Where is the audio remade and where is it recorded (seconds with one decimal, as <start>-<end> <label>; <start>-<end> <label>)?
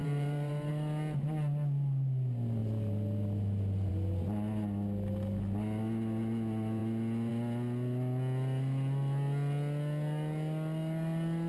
0.0-0.7 remade; 0.7-11.5 recorded